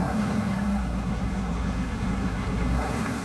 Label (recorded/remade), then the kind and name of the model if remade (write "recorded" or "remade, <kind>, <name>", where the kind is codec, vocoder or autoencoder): remade, codec, SNAC